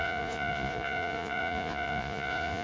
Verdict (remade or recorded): remade